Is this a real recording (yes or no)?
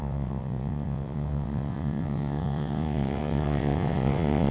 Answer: no